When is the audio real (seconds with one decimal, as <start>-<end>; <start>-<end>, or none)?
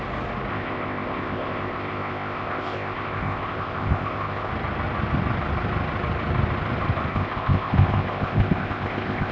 0.0-0.5; 4.5-7.1